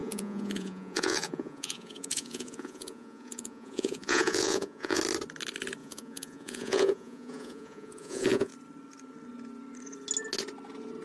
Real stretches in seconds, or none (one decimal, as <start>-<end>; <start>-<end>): 5.0-5.8; 8.5-11.0